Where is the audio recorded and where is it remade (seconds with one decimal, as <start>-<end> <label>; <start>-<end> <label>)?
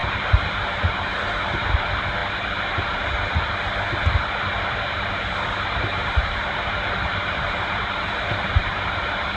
0.0-2.2 remade; 2.2-4.7 recorded; 4.7-9.4 remade